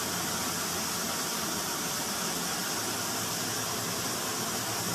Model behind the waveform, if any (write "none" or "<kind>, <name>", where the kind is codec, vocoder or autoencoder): none